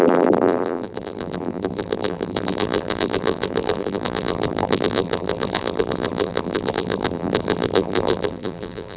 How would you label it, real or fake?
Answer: fake